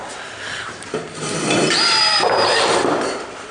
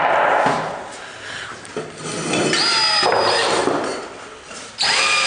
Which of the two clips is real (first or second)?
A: second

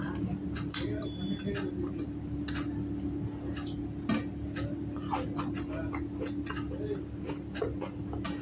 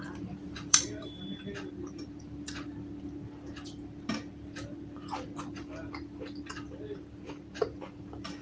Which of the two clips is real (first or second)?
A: first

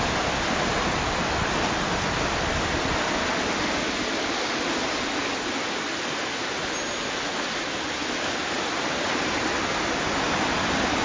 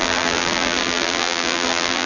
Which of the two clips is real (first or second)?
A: first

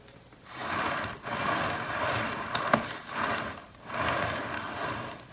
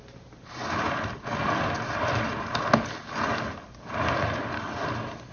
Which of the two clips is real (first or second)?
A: second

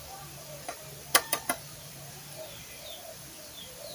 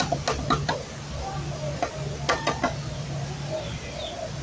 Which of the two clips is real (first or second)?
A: second